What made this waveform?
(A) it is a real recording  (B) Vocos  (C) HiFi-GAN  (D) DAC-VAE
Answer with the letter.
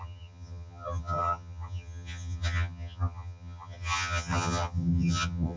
C